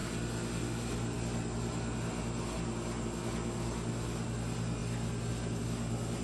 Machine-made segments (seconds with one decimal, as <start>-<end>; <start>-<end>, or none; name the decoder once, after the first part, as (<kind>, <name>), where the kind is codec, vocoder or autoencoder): none